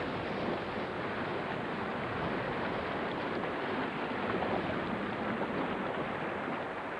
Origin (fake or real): real